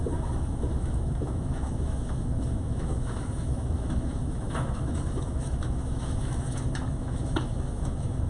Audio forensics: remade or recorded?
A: remade